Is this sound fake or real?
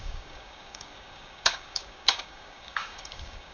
fake